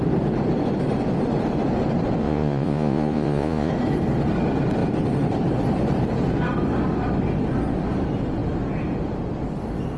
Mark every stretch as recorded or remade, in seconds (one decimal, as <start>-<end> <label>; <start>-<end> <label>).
0.0-2.2 recorded; 2.2-3.7 remade; 3.7-10.0 recorded